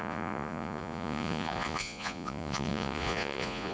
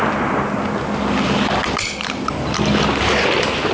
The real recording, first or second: second